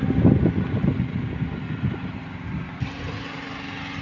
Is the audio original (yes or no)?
yes